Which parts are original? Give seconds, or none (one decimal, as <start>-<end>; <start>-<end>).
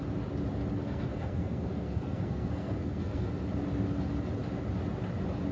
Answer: 0.0-0.8; 3.3-5.5